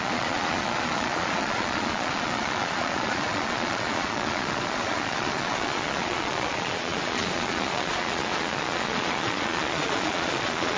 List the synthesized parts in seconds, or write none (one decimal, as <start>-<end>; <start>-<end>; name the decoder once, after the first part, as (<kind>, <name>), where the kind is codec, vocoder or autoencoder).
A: 0.0-10.8 (vocoder, Vocos)